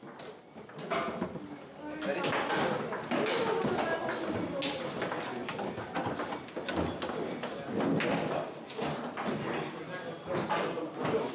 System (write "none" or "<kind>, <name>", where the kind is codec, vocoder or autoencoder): none